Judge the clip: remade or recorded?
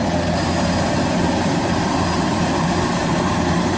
remade